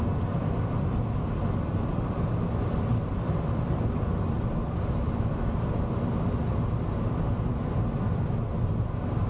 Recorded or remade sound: recorded